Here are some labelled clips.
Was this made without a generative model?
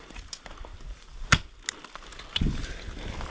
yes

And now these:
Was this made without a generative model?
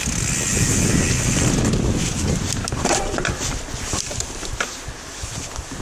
yes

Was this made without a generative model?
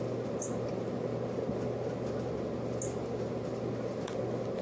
yes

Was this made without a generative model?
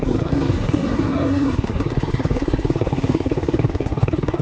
no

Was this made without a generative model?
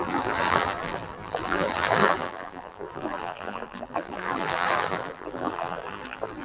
no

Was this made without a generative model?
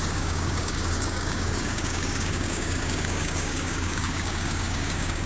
no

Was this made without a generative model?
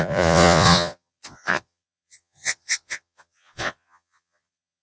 no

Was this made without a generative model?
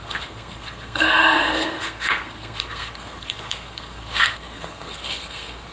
no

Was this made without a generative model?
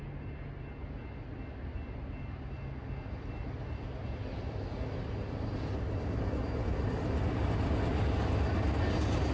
yes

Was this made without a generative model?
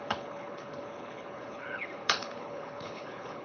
no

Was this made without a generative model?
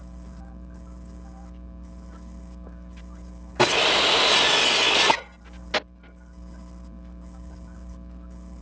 yes